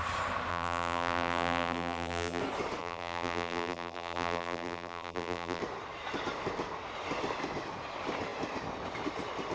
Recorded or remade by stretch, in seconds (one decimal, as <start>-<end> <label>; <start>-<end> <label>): 0.0-0.5 recorded; 0.5-2.4 remade; 2.4-2.8 recorded; 2.8-5.6 remade; 5.6-9.5 recorded